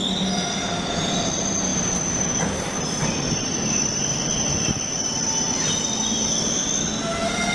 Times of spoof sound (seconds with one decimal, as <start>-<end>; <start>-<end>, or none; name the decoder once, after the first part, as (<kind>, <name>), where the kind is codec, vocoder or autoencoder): 0.0-1.2 (vocoder, BigVGAN v2); 1.7-4.1